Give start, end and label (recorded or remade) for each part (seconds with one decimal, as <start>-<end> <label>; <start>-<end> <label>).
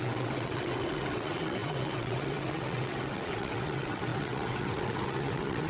0.0-5.7 remade